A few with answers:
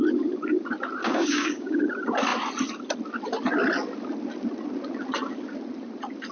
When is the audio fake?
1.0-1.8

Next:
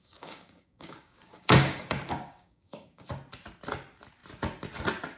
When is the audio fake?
0.0-3.1

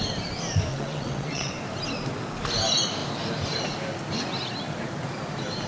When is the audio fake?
0.7-1.6

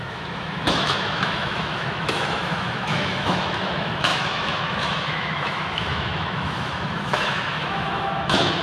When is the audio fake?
0.0-8.6